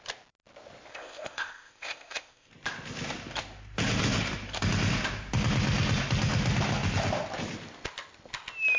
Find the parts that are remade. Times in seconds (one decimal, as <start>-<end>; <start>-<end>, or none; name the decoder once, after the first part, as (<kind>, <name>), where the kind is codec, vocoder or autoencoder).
0.9-2.5 (codec, ZipCodec)